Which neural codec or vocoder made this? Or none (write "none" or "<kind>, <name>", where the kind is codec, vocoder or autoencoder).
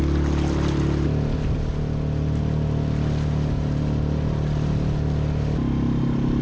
none